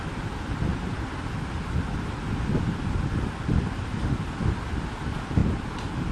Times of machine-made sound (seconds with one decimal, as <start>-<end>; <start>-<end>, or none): none